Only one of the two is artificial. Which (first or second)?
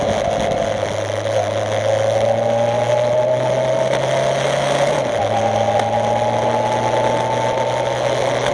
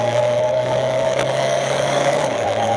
second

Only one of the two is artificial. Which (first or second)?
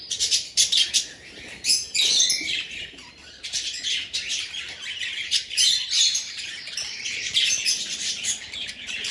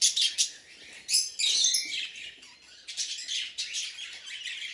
first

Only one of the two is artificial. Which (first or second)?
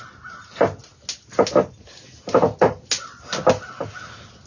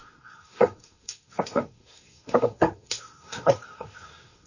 second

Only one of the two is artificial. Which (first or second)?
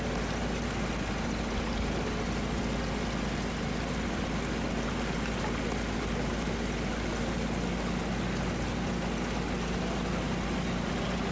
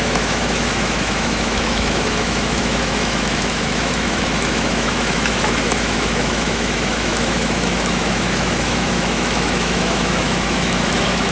second